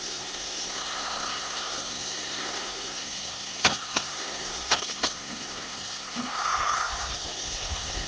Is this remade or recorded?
remade